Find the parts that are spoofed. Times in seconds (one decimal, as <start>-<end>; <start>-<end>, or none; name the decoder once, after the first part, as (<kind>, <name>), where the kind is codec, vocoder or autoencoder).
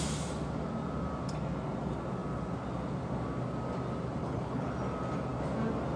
4.2-4.7 (codec, HILCodec)